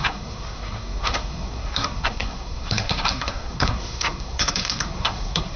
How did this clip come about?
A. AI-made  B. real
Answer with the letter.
A